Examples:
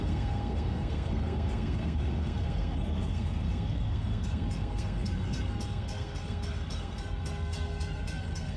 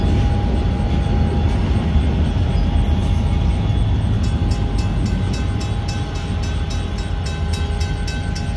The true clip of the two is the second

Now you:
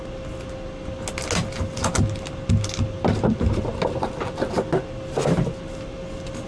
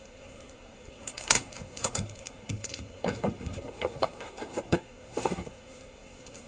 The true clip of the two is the first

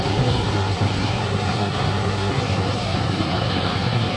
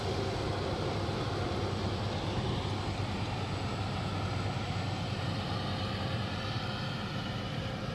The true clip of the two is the second